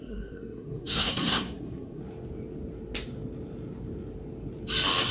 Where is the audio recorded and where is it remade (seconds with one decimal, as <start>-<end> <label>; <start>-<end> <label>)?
0.0-2.0 remade; 2.0-5.1 recorded